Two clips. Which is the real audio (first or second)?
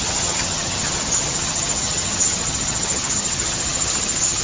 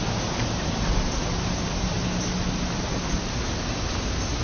second